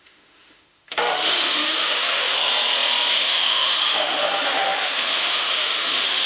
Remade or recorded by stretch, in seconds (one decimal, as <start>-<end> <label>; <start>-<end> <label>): 0.0-2.5 remade; 2.5-3.1 recorded; 3.1-6.3 remade